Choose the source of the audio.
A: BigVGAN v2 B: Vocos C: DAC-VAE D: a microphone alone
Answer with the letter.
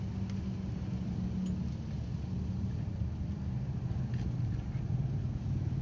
D